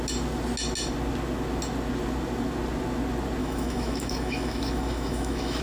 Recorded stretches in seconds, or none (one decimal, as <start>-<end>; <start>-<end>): 0.0-3.4